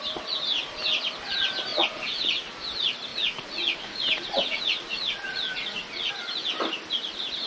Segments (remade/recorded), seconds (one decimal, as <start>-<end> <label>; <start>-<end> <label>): 0.0-1.7 recorded; 1.7-2.5 remade; 2.5-3.1 recorded; 3.1-6.1 remade; 6.1-7.5 recorded